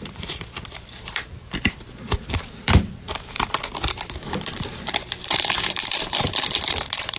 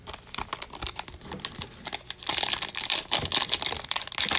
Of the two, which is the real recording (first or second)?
second